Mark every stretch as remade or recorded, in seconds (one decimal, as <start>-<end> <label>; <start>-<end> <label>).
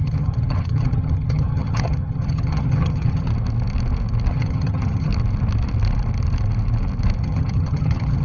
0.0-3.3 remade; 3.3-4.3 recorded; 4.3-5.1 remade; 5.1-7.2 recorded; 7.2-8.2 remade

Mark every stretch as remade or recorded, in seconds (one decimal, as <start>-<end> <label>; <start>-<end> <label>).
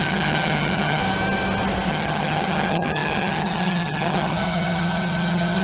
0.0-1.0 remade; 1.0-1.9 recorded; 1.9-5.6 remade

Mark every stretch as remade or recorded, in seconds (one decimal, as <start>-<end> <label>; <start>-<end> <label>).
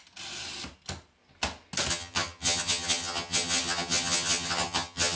0.0-1.9 recorded; 1.9-5.2 remade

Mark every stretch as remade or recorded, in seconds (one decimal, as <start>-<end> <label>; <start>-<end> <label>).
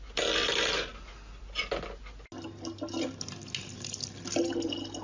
0.0-5.0 recorded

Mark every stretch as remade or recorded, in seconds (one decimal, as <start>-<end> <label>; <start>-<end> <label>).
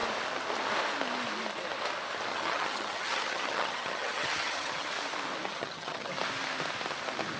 0.0-2.3 recorded; 2.3-4.9 remade; 4.9-5.5 recorded; 5.5-6.1 remade; 6.1-7.4 recorded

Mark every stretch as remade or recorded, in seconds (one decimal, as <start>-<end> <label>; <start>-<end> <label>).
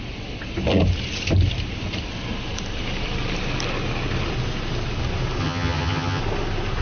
0.0-5.4 recorded; 5.4-6.2 remade; 6.2-6.8 recorded